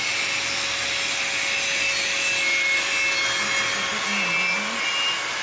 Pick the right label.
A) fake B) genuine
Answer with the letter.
B